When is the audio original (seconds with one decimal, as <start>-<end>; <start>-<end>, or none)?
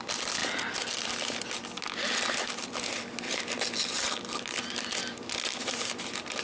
0.0-6.4